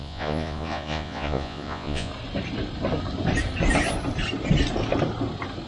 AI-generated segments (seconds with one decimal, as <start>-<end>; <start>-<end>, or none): 0.0-2.1